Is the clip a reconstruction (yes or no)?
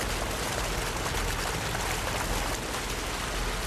no